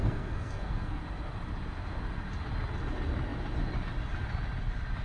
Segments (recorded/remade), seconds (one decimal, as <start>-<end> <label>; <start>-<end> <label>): 0.0-1.0 remade; 1.0-5.0 recorded